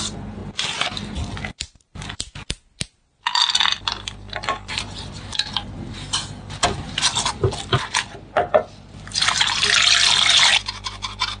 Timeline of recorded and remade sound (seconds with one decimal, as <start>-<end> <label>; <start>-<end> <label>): 0.0-11.4 recorded